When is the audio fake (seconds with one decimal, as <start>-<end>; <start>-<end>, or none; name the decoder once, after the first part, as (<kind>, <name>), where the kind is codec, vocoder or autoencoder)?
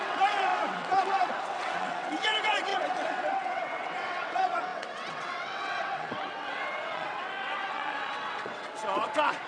0.0-9.5 (vocoder, WaveNeXt)